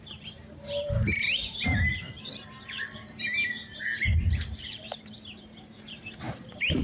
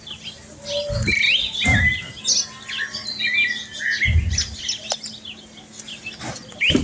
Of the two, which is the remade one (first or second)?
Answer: first